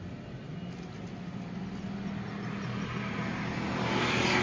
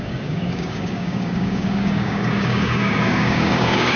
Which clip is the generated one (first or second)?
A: second